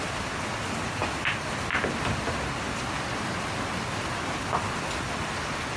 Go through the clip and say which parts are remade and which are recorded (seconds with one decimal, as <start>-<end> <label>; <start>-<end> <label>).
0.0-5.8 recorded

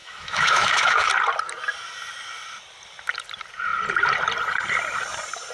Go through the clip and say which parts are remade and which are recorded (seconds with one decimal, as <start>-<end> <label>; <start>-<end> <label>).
0.0-1.1 remade; 1.1-5.5 recorded

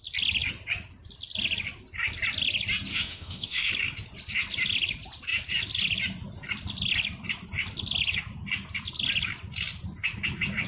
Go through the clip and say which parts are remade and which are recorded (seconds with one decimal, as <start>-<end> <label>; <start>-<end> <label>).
0.0-2.9 recorded; 2.9-3.7 remade; 3.7-10.7 recorded

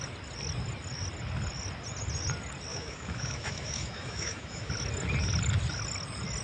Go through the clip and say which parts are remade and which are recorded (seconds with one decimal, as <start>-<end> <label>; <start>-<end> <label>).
0.0-2.7 recorded; 2.7-4.7 remade; 4.7-6.4 recorded